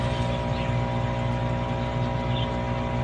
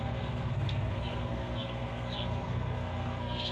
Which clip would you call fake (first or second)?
second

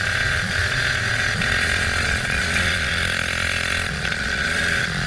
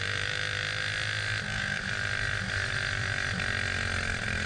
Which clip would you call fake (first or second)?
first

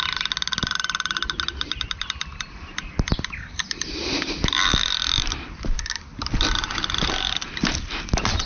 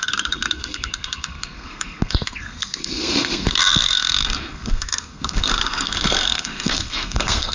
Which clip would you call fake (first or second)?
second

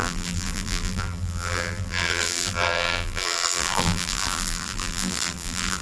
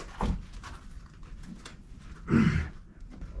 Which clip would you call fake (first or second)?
first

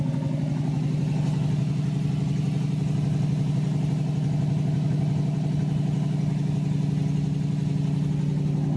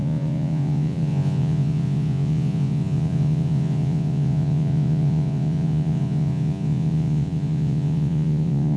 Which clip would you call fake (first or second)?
second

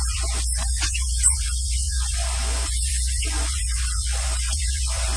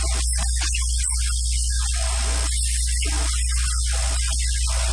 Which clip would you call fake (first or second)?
first